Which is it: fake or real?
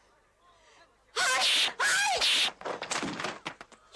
real